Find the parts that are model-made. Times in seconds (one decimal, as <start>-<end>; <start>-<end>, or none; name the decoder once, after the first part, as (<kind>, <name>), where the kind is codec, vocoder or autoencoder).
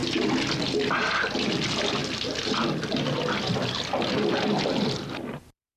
1.0-5.8 (vocoder, BigVGAN v2)